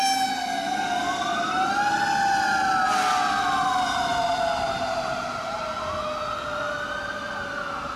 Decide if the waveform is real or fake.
real